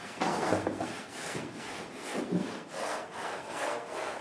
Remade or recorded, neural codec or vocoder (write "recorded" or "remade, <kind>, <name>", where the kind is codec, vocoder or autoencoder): remade, codec, SNAC